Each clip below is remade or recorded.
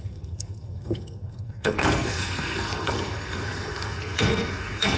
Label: remade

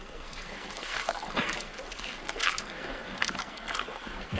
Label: remade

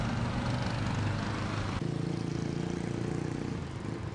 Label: recorded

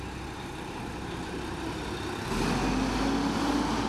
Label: recorded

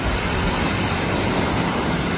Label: recorded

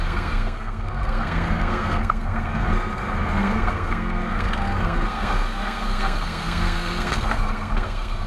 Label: remade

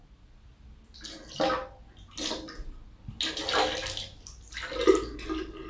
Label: recorded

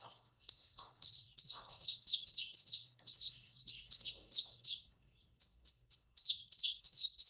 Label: remade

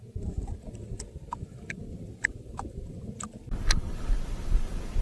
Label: recorded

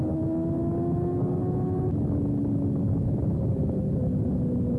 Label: recorded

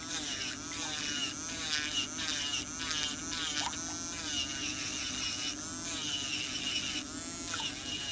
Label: recorded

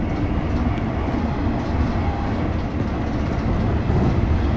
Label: recorded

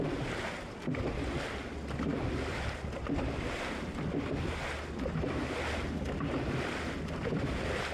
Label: recorded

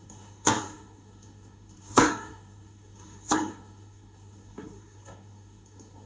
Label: remade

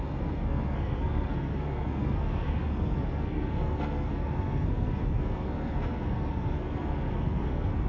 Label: remade